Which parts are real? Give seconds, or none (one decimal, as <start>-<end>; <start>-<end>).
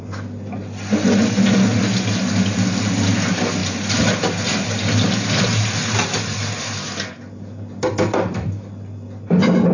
0.0-9.7